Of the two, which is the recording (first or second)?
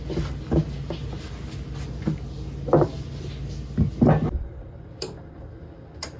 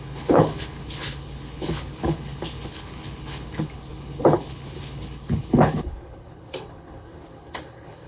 first